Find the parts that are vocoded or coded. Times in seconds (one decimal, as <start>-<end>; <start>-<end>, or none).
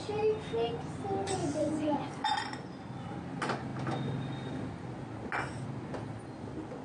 1.4-2.1